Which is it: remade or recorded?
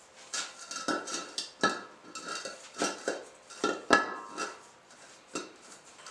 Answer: recorded